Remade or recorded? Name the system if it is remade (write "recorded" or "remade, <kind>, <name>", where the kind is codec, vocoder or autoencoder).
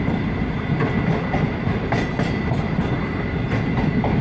recorded